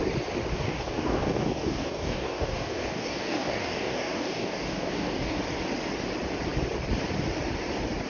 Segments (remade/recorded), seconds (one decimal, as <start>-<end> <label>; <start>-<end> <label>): 0.0-0.5 recorded; 0.5-5.4 remade; 5.4-8.1 recorded